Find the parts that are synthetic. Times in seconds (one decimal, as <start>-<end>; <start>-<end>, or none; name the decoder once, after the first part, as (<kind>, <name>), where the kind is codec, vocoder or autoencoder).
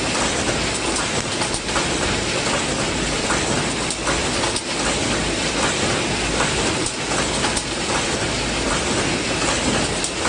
0.0-10.3 (vocoder, BigVGAN v2)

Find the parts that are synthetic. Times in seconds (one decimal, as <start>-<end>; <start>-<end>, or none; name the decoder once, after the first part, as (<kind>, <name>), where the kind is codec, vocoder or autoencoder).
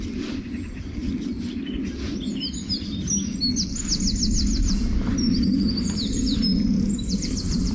0.0-1.0 (vocoder, BigVGAN v2); 5.6-6.5; 7.2-7.7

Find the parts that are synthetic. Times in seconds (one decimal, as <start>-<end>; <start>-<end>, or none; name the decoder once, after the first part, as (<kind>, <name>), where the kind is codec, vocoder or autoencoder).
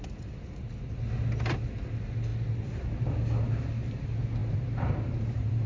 4.4-5.7 (vocoder, BigVGAN v2)